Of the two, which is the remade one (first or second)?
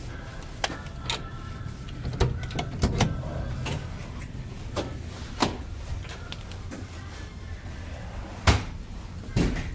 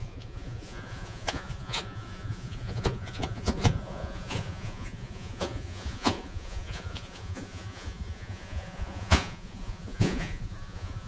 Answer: second